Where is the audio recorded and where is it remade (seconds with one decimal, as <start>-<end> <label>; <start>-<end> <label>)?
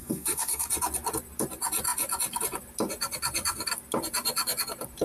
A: 0.0-0.7 remade; 0.7-5.0 recorded